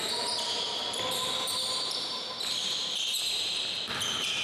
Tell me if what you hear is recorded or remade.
recorded